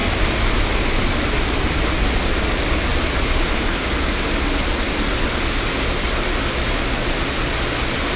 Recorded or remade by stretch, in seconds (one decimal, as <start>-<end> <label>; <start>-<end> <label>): 0.0-8.2 recorded